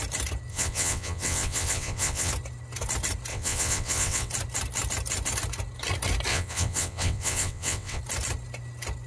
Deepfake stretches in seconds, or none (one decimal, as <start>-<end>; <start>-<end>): 0.5-2.3; 3.3-4.3; 6.3-8.0